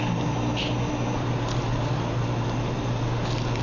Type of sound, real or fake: real